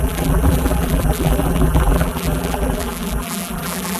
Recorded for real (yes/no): no